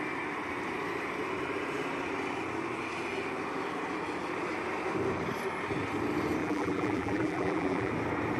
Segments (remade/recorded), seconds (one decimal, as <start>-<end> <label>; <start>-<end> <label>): 0.0-6.4 recorded; 6.4-7.9 remade; 7.9-8.4 recorded